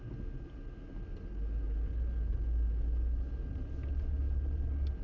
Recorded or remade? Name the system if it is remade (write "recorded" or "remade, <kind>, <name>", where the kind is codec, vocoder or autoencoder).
recorded